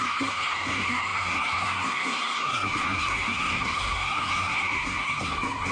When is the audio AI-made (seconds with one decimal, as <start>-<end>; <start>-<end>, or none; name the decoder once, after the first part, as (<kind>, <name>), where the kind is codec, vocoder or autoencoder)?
0.0-5.7 (codec, SNAC)